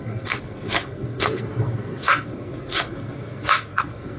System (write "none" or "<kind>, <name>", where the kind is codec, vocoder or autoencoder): codec, SNAC